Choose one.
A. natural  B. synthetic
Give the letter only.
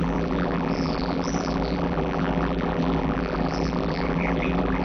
B